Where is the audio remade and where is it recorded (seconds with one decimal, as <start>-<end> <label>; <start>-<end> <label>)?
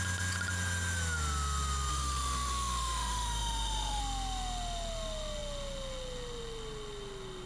0.0-1.9 recorded; 1.9-4.0 remade; 4.0-7.5 recorded